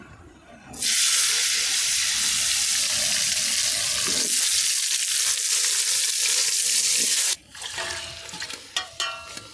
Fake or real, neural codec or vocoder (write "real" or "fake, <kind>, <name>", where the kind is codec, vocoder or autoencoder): real